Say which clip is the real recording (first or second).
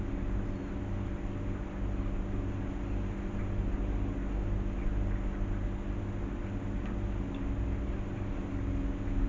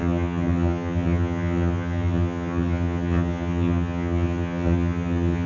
first